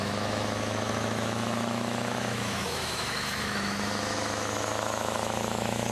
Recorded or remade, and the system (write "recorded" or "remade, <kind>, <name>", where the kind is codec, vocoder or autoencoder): remade, autoencoder, DAC-VAE